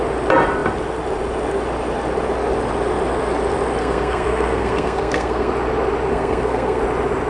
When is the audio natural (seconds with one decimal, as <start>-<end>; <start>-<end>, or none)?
0.0-3.8; 5.5-6.1; 6.8-7.3

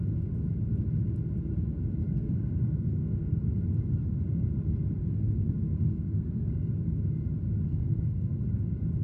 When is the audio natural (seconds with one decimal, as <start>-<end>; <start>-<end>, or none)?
0.0-2.0; 3.5-5.0; 6.7-7.7; 8.4-9.0

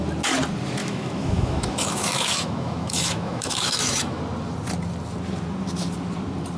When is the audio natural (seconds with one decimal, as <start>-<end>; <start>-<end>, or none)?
0.0-0.8; 4.2-6.6

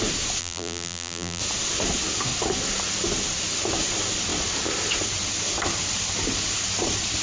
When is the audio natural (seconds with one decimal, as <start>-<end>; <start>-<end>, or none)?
0.0-0.4; 1.4-7.2

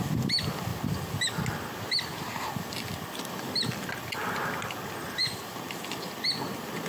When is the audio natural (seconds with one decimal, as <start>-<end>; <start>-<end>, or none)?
0.0-6.9

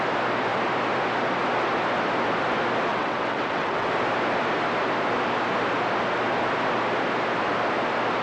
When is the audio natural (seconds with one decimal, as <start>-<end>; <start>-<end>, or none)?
0.0-2.9; 3.9-8.2

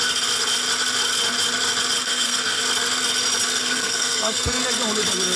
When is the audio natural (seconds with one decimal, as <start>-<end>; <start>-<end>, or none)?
0.0-2.0; 2.6-3.6; 4.6-5.4